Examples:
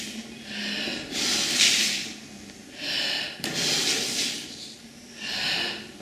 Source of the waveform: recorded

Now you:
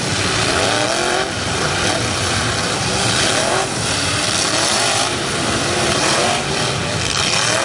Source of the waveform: remade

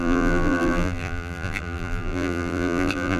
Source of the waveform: remade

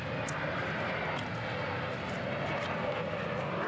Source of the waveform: recorded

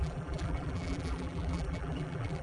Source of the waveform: remade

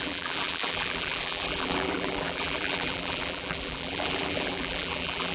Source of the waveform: remade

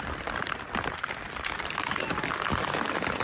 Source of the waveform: remade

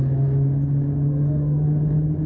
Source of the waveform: recorded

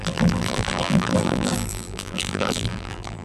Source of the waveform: remade